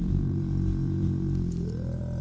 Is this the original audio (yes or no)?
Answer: no